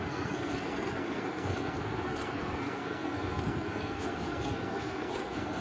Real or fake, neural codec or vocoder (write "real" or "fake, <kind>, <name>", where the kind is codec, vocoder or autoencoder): fake, codec, SNAC